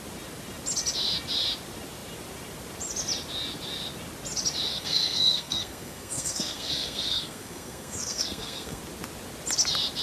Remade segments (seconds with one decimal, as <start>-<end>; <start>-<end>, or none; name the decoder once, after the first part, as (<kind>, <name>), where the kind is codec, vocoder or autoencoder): 4.7-8.8 (codec, SNAC)

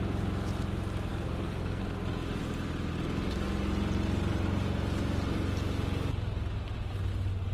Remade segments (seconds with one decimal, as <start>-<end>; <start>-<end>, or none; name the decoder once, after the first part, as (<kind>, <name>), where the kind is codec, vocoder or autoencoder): 1.1-1.8 (codec, SNAC)

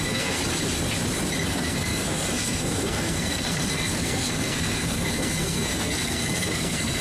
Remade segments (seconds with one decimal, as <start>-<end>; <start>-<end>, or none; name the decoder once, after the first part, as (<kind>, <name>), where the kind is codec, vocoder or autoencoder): 0.0-0.4 (codec, SNAC); 1.5-7.0

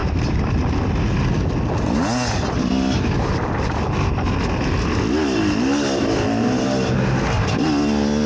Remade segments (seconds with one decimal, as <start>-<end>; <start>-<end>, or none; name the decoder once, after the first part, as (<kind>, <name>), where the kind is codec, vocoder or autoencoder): none

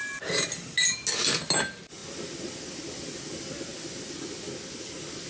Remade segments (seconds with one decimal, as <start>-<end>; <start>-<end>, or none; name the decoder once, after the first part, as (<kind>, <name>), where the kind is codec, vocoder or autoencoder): none

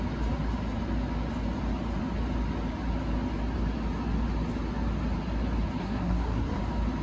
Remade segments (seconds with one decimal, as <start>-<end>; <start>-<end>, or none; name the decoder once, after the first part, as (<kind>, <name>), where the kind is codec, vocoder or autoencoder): 5.8-6.6 (codec, SNAC)

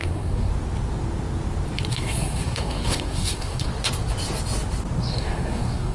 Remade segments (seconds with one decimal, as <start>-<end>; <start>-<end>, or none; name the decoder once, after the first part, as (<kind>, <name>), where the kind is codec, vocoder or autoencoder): 0.0-0.5 (codec, SNAC); 1.9-3.7; 5.0-5.9